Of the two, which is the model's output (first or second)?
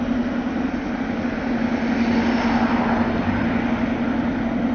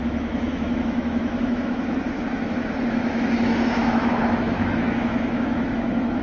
second